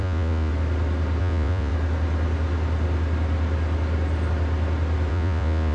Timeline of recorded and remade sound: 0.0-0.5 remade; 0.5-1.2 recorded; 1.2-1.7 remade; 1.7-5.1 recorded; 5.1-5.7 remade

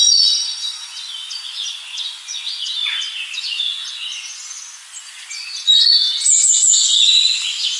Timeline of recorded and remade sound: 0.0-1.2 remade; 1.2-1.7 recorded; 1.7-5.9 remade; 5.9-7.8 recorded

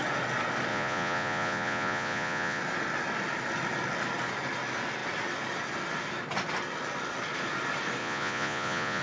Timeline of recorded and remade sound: 0.0-0.7 recorded; 0.7-2.6 remade; 2.6-8.0 recorded; 8.0-9.0 remade

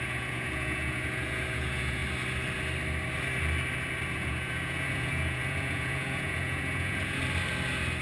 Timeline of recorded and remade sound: 0.0-2.0 remade; 2.0-4.1 recorded; 4.1-7.2 remade; 7.2-8.0 recorded

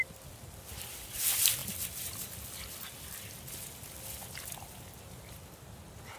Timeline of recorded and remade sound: 0.0-6.2 recorded

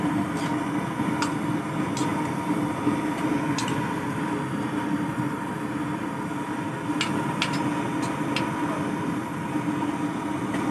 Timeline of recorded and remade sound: 0.0-10.7 recorded

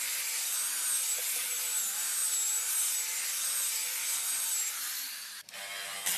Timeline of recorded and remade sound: 0.0-6.2 recorded